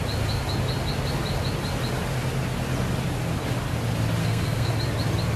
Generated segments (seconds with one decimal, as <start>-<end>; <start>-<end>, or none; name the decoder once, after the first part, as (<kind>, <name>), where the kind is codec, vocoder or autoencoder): 4.2-4.7 (codec, SNAC)